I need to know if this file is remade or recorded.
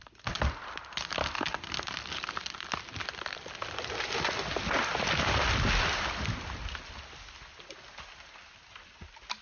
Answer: recorded